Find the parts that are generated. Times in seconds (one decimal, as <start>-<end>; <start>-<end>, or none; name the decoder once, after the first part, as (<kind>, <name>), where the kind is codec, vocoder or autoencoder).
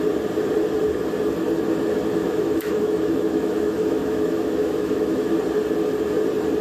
2.2-5.4 (autoencoder, DAC-VAE)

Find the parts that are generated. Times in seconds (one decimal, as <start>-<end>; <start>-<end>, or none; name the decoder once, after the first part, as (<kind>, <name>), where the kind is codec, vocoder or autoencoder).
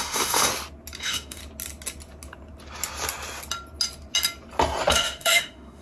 0.0-0.5 (autoencoder, DAC-VAE); 1.0-1.4; 4.9-5.8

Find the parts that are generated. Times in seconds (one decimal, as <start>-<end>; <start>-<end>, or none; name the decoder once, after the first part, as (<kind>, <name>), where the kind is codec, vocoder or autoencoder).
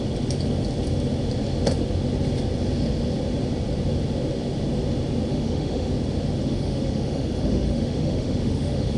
5.3-5.9 (autoencoder, DAC-VAE); 6.4-9.0